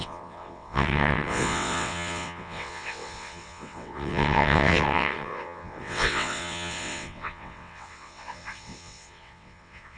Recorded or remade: remade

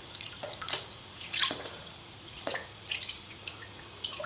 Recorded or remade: remade